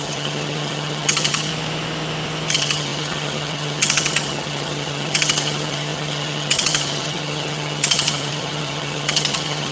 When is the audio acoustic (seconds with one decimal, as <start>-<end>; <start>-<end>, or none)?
1.5-2.5